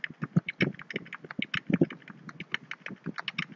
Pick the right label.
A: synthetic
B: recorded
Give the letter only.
B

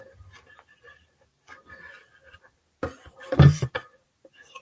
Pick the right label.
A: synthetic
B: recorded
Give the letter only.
B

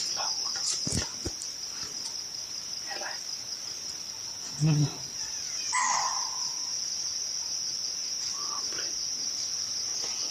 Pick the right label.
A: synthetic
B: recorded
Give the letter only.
B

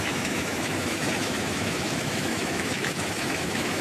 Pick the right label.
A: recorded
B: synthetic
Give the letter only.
B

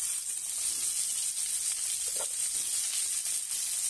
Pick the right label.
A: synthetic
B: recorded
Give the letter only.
B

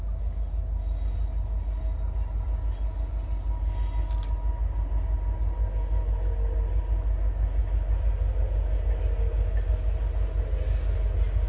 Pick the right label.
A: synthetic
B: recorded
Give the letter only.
B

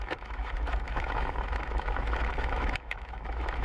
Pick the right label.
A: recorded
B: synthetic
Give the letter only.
B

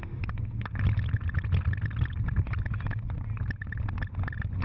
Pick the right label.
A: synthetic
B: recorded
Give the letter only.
B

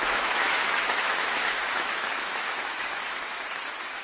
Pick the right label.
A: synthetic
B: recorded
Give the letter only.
A